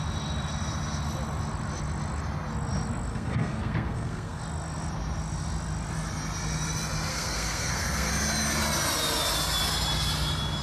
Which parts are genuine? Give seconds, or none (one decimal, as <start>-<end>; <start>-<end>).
0.0-3.1; 4.4-7.1; 8.1-10.6